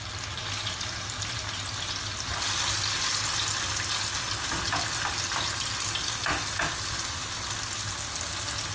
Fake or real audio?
real